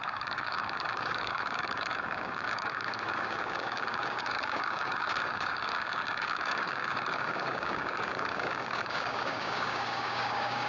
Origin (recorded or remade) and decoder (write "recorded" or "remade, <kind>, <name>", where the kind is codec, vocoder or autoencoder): remade, codec, DAC